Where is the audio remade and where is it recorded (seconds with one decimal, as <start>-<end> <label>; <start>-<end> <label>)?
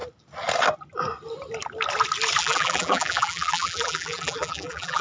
0.0-2.4 recorded; 2.4-5.0 remade